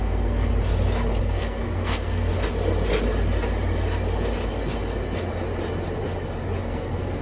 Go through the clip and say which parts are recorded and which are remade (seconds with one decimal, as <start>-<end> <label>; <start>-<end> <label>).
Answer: 0.0-0.5 remade; 0.5-1.2 recorded; 1.2-2.3 remade; 2.3-6.6 recorded; 6.6-7.2 remade